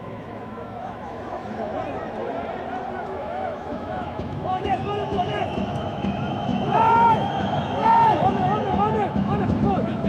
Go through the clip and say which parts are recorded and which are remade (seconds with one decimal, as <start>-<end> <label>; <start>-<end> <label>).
0.0-1.7 remade; 1.7-3.0 recorded; 3.0-10.1 remade